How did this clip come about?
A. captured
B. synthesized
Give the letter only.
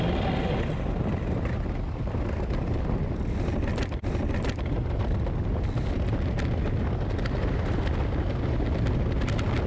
A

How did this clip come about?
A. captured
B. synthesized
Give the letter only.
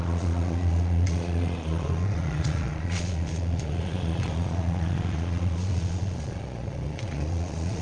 B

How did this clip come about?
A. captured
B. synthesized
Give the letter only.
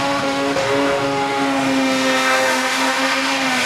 B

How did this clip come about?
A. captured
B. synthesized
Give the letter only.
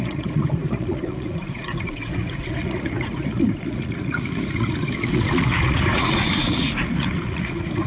B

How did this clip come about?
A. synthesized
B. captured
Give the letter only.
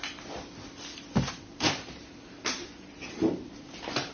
A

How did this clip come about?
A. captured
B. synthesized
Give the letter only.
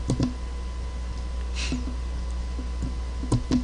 A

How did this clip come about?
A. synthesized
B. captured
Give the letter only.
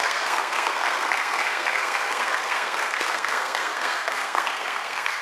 A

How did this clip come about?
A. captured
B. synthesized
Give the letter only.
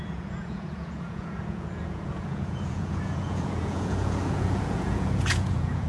B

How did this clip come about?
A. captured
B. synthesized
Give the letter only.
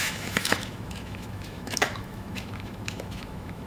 B